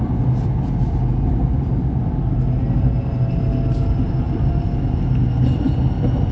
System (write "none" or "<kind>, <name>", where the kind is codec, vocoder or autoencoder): none